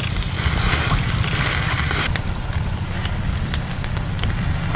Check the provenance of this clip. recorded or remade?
recorded